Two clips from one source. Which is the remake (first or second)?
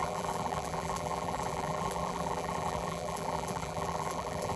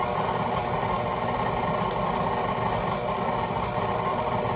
first